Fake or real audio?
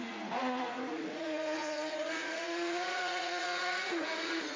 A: fake